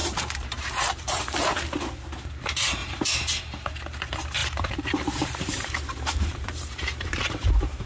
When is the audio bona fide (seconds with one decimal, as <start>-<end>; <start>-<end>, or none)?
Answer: 1.2-2.8; 3.4-4.4; 7.5-7.9